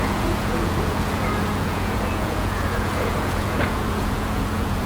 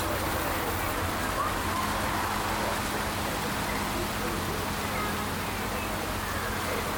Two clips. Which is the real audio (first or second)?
second